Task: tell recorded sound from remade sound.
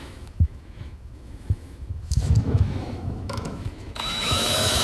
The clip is remade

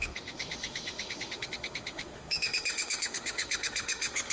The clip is remade